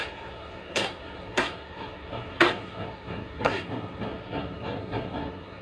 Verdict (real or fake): fake